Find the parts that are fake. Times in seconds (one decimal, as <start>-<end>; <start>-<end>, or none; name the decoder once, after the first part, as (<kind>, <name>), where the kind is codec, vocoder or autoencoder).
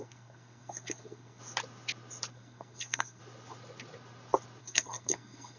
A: 0.0-1.4 (codec, SNAC); 2.3-3.2; 4.6-5.6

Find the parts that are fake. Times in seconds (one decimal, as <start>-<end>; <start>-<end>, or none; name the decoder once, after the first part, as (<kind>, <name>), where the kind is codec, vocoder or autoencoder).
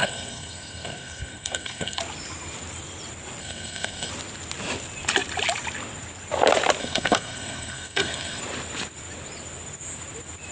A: 0.0-2.0 (codec, SNAC); 3.4-4.1; 6.8-8.4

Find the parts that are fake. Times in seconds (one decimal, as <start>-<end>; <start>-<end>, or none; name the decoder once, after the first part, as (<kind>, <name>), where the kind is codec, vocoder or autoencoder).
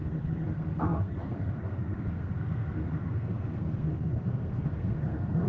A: 0.0-5.5 (codec, SNAC)